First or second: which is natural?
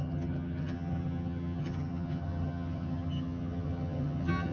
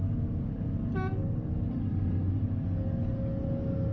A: second